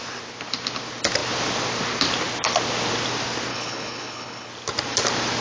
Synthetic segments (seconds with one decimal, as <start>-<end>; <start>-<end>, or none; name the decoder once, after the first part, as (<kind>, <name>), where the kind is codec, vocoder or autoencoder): 3.5-4.5 (codec, HILCodec)